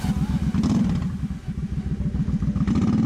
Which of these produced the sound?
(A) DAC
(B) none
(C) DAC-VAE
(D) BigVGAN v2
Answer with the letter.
B